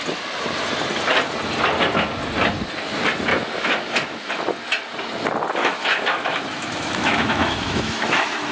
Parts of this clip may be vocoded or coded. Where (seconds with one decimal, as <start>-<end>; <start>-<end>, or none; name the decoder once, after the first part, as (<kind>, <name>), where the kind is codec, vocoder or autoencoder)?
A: 3.3-4.3 (autoencoder, DAC-VAE); 5.6-8.5